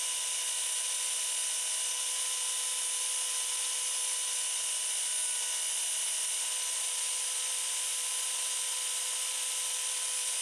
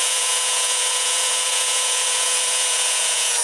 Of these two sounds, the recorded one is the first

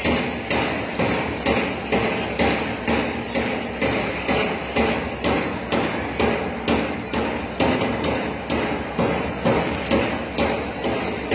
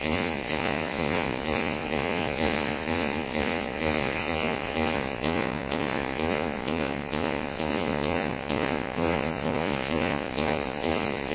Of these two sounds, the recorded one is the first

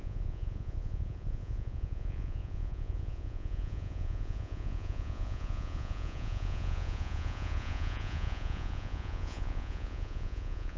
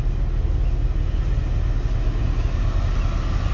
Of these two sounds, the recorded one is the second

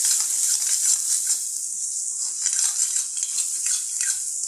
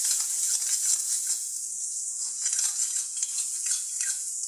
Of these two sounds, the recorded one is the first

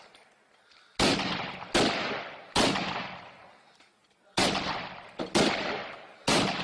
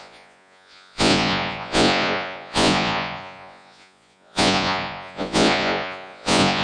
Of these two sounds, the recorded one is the first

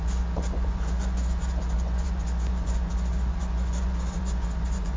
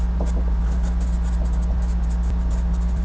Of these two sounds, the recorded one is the second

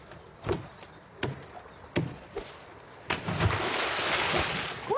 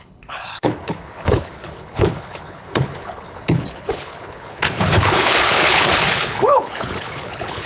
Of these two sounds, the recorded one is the first